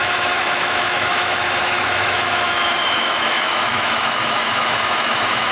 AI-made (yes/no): yes